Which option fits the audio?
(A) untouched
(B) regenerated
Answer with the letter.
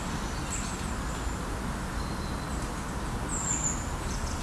A